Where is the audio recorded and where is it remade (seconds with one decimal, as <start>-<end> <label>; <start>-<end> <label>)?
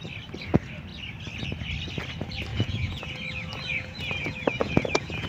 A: 0.0-2.5 recorded; 2.5-3.2 remade; 3.2-3.7 recorded; 3.7-5.3 remade